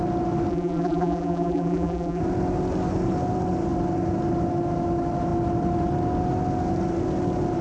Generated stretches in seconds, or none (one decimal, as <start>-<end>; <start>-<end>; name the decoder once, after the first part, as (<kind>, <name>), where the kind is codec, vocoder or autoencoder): 0.5-2.2 (vocoder, BigVGAN v2)